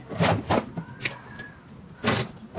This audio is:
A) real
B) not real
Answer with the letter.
A